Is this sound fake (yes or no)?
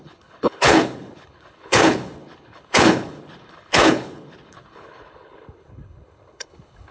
yes